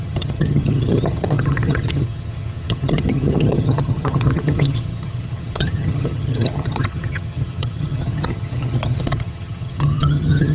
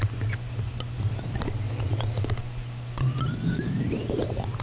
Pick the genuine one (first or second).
second